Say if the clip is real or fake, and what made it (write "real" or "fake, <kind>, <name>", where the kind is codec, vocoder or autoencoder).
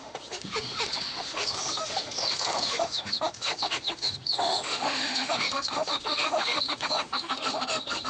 fake, autoencoder, DAC-VAE